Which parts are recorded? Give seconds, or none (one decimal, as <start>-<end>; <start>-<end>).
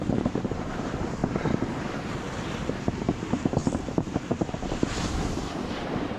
1.2-2.8